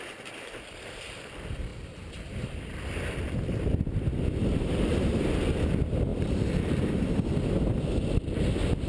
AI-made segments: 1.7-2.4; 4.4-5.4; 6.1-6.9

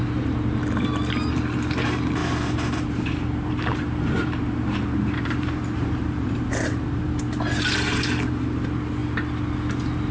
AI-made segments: 2.2-7.2

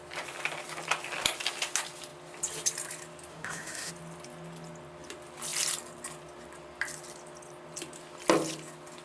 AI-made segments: 3.3-3.9

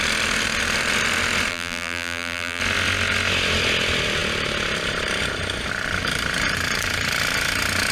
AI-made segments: 1.5-2.6

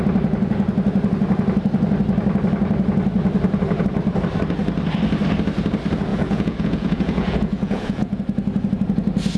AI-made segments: 6.1-8.2